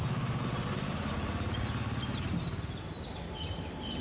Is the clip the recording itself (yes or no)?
yes